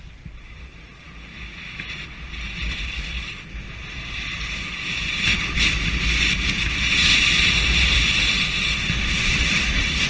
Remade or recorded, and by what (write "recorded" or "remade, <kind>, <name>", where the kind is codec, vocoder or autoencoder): recorded